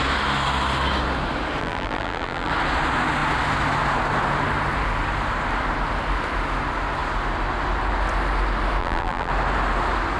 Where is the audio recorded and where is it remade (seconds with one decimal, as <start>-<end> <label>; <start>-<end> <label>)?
0.0-1.6 recorded; 1.6-2.5 remade; 2.5-8.8 recorded; 8.8-9.3 remade; 9.3-10.2 recorded